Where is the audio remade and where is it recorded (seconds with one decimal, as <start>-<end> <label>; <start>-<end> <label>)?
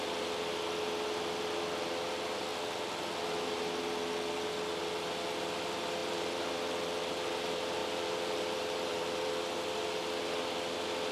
0.0-6.0 recorded; 6.0-6.5 remade; 6.5-7.8 recorded; 7.8-9.3 remade; 9.3-11.1 recorded